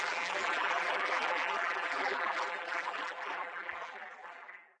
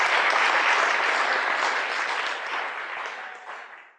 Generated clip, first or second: first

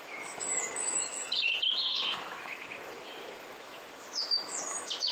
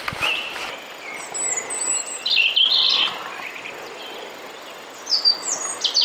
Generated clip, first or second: first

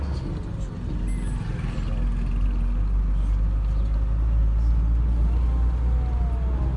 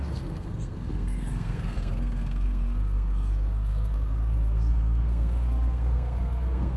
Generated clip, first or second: second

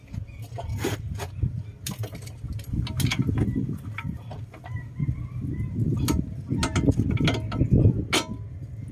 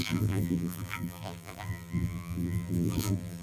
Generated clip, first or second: second